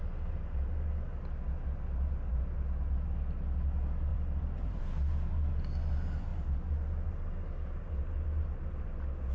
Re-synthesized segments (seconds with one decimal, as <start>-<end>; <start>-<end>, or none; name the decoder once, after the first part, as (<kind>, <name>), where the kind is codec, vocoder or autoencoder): 4.1-4.8 (vocoder, BigVGAN v2)

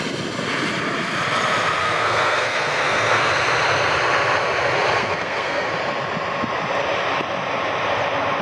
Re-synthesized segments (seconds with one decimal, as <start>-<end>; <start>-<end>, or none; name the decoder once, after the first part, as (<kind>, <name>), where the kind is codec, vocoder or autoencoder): 1.8-3.3 (codec, SNAC); 5.0-5.7

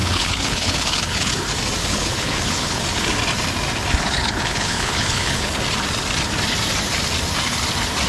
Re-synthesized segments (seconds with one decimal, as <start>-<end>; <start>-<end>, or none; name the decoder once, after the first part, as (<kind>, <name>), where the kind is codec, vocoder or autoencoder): 0.0-1.3 (codec, HILCodec); 1.8-2.8; 4.0-5.6

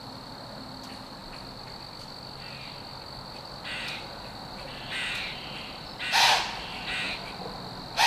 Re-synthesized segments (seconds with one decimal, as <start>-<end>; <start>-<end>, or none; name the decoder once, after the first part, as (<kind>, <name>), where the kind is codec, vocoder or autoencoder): none

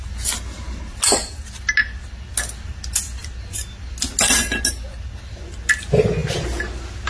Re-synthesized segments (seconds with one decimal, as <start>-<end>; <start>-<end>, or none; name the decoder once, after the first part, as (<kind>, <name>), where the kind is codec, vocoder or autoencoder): none